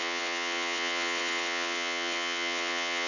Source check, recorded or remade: remade